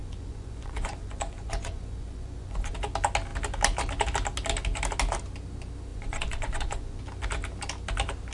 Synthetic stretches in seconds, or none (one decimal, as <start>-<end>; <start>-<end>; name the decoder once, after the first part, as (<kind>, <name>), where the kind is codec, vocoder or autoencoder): 0.0-2.7 (vocoder, Vocos); 5.9-7.0

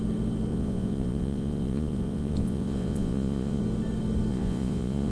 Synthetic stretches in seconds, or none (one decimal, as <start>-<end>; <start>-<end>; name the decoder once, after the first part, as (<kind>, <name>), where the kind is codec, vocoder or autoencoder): 0.5-3.6 (vocoder, Vocos); 4.3-5.1

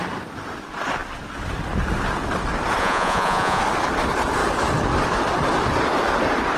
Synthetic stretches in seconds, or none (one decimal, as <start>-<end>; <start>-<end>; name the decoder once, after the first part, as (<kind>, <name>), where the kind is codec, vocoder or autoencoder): 2.8-3.6 (vocoder, Vocos)

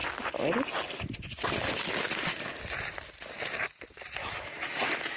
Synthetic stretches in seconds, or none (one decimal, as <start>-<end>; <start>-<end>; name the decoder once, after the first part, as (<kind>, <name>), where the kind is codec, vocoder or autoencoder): 4.2-5.2 (autoencoder, DAC-VAE)

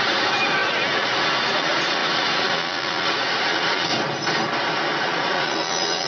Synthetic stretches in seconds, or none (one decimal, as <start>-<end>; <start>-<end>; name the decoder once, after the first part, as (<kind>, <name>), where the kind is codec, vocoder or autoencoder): 0.0-3.9 (vocoder, Vocos); 5.0-6.1

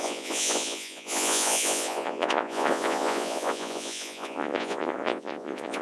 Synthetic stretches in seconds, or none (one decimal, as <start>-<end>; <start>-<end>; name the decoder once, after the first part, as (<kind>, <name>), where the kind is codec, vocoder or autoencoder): 0.0-5.8 (vocoder, Vocos)

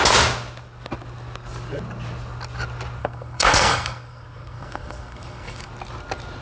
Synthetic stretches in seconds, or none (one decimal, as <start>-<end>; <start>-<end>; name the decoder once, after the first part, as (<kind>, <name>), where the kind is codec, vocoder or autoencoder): 3.0-5.7 (codec, SNAC)